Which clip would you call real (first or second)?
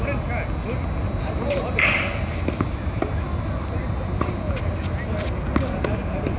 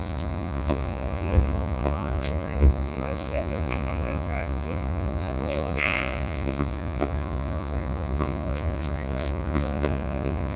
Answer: first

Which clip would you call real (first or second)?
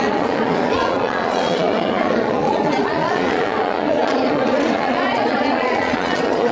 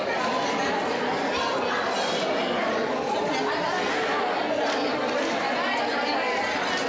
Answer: second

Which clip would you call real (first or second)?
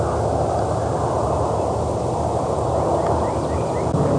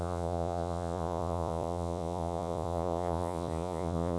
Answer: first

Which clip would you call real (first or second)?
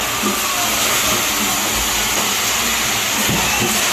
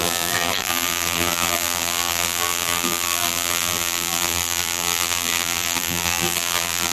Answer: first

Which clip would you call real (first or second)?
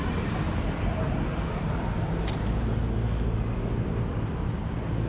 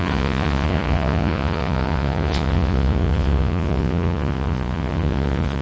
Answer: first